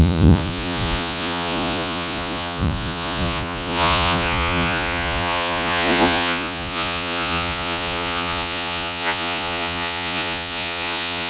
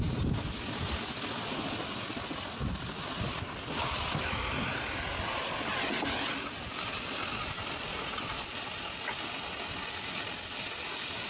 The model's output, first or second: first